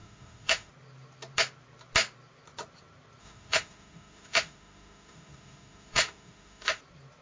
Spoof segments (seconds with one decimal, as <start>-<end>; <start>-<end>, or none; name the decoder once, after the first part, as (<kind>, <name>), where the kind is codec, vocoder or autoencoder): 0.0-0.7 (autoencoder, DAC-VAE); 3.2-6.8